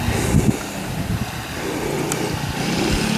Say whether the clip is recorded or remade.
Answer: recorded